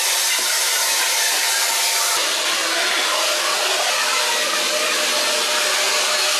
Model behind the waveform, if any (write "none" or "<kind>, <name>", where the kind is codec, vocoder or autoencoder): none